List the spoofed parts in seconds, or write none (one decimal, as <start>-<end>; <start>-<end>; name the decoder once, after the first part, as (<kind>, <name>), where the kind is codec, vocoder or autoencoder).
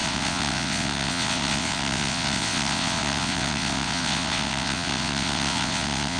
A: 0.0-6.2 (vocoder, WaveNeXt)